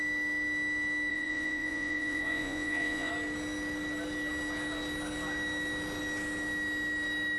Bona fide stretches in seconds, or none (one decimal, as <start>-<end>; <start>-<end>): 0.0-1.1; 3.1-7.4